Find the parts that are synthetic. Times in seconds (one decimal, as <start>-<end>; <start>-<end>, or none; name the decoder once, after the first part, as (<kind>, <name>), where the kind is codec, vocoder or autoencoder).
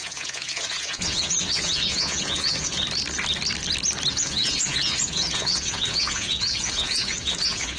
0.0-2.8 (vocoder, Vocos); 4.1-7.8